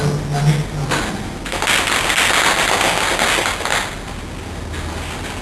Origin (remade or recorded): recorded